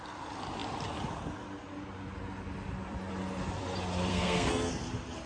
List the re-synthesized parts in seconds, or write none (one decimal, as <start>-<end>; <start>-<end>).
4.1-4.7